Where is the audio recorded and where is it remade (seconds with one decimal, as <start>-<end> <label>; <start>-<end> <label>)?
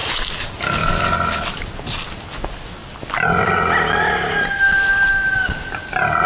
0.0-6.3 recorded